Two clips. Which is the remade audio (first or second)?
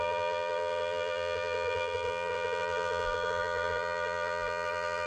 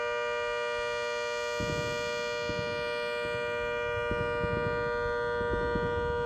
first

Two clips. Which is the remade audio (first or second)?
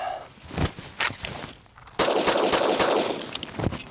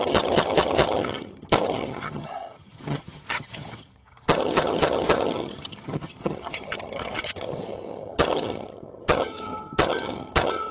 second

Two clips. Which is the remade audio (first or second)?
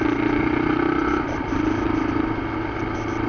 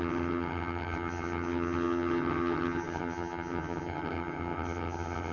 second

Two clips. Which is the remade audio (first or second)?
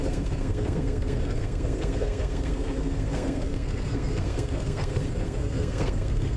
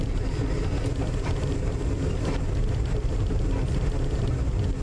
first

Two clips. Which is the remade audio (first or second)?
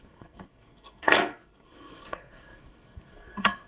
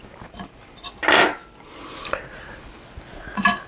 first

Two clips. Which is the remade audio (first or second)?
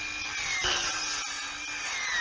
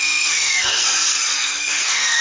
second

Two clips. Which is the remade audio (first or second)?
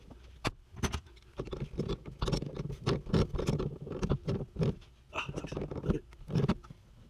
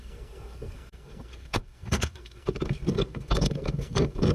second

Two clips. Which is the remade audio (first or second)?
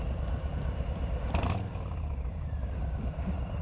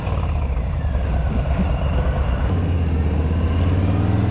first